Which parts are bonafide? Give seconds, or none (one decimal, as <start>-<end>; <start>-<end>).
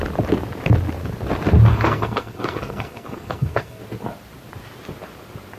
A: 0.0-1.7; 3.8-5.6